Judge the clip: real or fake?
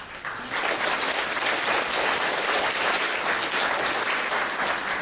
real